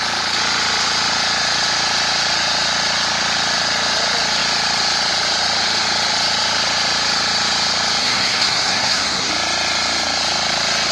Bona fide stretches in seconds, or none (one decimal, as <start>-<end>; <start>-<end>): 0.0-8.0; 9.3-10.9